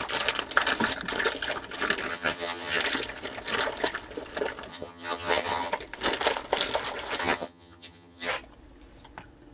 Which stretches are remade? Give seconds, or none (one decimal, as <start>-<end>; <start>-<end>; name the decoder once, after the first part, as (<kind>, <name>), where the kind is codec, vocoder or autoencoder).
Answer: 2.1-2.8 (vocoder, HiFi-GAN); 4.7-5.7; 7.2-8.3